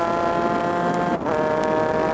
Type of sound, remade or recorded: recorded